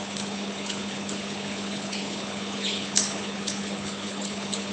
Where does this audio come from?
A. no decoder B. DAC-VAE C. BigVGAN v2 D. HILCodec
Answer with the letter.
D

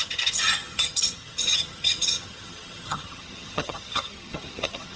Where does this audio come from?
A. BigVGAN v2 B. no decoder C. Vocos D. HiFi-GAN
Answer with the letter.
D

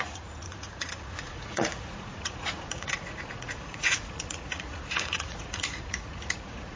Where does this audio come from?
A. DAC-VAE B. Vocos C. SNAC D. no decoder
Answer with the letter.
B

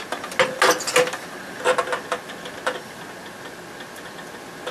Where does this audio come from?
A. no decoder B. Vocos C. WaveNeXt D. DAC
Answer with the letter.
A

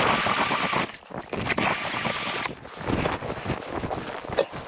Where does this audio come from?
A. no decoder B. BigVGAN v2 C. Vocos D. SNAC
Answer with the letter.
A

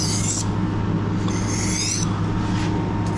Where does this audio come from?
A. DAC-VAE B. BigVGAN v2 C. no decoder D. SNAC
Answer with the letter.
C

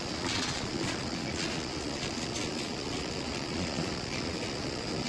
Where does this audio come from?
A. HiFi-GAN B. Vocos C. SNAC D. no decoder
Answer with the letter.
B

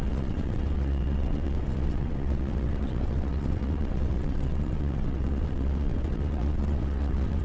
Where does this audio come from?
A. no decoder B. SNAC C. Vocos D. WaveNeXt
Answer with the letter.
D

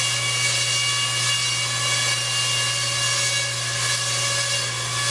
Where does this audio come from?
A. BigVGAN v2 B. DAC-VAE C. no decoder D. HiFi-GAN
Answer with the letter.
C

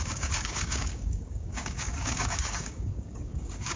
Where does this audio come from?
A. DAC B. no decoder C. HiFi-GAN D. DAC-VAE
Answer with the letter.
A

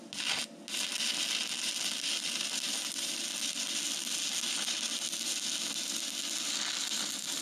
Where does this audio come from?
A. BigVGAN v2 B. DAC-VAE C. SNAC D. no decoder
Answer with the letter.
D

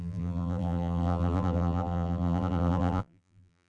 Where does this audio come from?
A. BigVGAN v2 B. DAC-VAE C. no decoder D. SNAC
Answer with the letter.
A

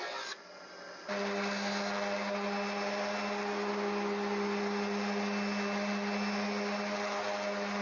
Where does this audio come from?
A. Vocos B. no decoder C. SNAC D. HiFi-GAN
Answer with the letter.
B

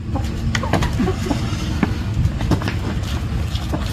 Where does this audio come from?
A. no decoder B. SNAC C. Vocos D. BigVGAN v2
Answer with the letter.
A